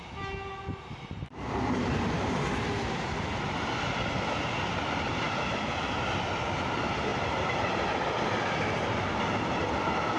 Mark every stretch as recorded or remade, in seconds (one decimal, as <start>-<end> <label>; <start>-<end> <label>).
0.0-10.2 recorded